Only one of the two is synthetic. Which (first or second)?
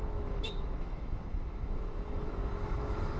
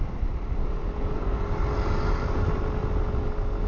first